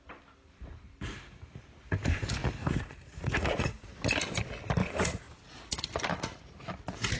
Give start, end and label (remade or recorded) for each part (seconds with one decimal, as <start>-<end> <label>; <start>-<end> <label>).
0.0-2.6 recorded; 2.6-3.9 remade; 3.9-4.8 recorded; 4.8-5.9 remade; 5.9-7.2 recorded